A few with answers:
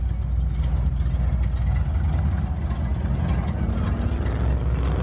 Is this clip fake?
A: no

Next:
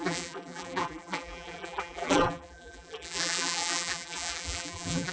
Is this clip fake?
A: yes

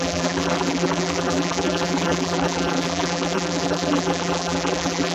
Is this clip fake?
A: yes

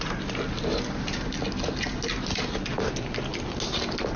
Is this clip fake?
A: no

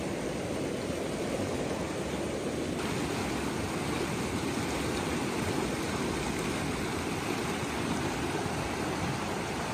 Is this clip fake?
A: no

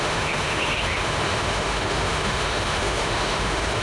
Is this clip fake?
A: yes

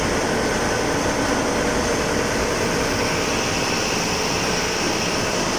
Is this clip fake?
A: yes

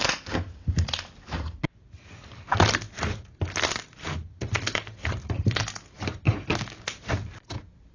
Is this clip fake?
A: no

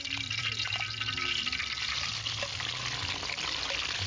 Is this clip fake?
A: yes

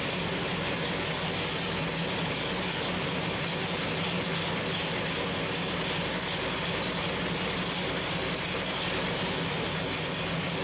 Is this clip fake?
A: no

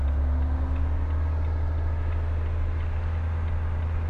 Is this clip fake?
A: no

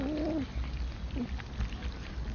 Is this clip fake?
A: no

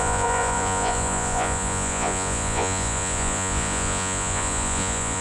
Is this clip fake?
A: yes